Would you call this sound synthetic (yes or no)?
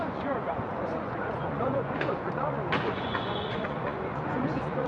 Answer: yes